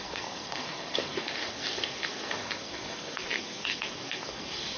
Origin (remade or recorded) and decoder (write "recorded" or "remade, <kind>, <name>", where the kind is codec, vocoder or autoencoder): remade, codec, SNAC